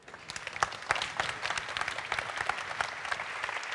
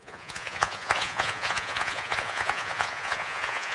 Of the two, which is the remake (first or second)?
second